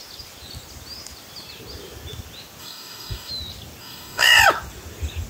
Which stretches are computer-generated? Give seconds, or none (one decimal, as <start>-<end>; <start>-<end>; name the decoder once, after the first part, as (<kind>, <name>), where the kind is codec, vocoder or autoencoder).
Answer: 2.6-3.3 (codec, DAC); 3.8-4.4